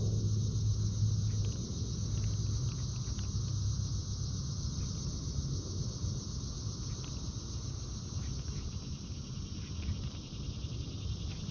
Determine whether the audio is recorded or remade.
recorded